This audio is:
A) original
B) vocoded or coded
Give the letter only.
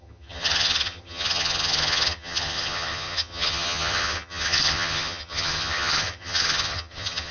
B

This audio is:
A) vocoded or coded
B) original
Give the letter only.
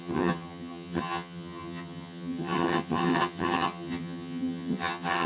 A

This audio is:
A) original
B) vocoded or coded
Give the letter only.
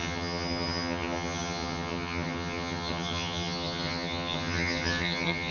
B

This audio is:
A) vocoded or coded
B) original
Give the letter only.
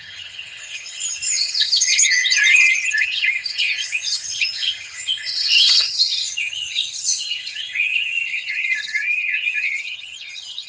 A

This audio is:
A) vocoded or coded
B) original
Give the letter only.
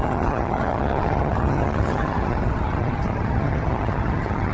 A